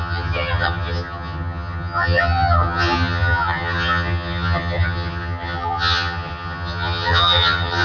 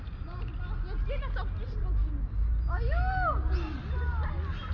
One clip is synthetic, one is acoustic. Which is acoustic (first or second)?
second